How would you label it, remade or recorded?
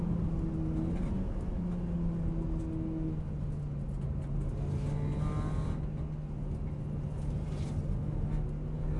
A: recorded